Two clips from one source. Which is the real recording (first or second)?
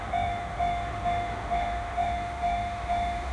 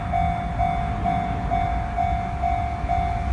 second